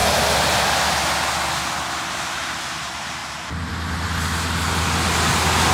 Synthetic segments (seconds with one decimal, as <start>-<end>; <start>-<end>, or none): 2.1-3.2